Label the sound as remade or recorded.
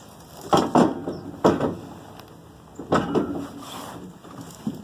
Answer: recorded